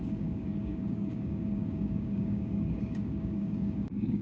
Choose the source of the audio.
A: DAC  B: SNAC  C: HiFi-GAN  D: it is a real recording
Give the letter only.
A